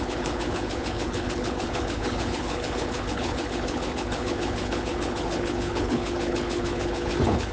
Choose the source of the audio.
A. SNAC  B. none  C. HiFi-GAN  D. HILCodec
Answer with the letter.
D